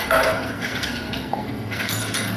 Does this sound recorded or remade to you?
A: remade